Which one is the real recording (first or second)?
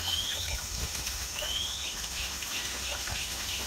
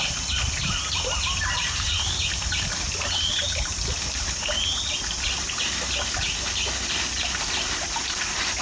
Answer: second